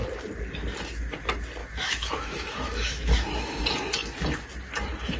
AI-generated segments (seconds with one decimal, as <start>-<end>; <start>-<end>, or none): 1.6-3.6